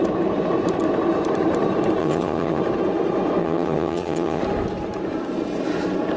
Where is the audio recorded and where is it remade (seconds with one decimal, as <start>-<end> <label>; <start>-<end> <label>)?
0.0-2.0 recorded; 2.0-2.6 remade; 2.6-3.4 recorded; 3.4-4.4 remade; 4.4-6.2 recorded

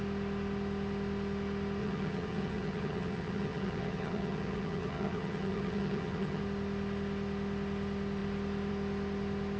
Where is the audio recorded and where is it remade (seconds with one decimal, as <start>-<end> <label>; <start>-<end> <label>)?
0.0-1.8 recorded; 1.8-6.4 remade; 6.4-9.6 recorded

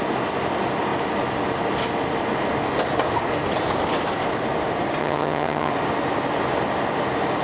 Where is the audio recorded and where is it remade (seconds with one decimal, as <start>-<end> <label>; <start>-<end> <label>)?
0.0-5.0 recorded; 5.0-5.7 remade; 5.7-7.4 recorded

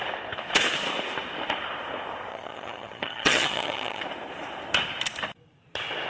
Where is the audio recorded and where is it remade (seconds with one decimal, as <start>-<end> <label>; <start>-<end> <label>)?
0.0-2.3 recorded; 2.3-4.0 remade; 4.0-6.1 recorded